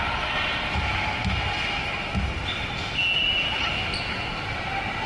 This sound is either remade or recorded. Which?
recorded